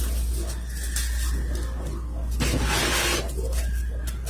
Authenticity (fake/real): real